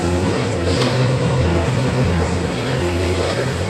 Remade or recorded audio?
remade